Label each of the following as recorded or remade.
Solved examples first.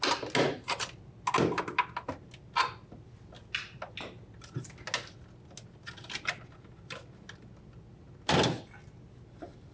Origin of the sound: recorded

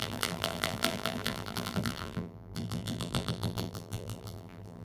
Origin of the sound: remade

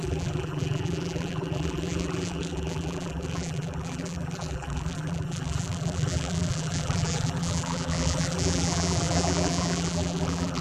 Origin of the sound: remade